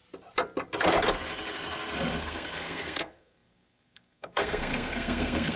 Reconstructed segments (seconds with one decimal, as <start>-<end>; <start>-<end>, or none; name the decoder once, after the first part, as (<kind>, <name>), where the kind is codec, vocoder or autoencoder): 2.2-5.6 (codec, SNAC)